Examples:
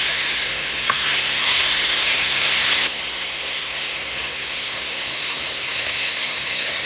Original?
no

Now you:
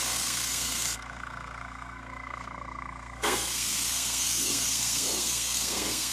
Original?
no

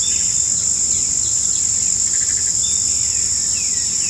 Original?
yes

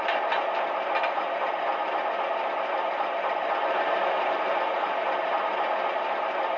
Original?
yes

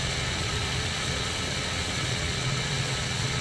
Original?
no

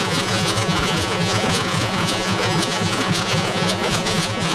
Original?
no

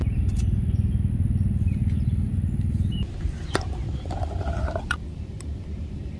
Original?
yes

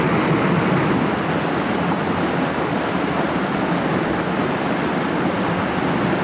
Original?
yes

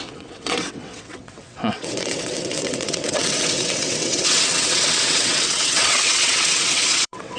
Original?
no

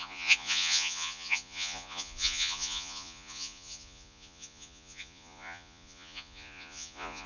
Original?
no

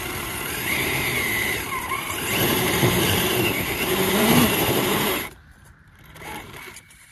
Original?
no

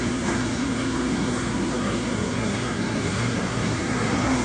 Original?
no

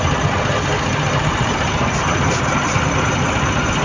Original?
yes